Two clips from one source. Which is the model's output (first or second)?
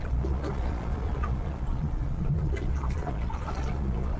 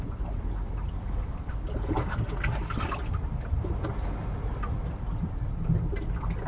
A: first